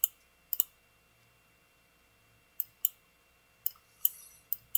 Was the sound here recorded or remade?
recorded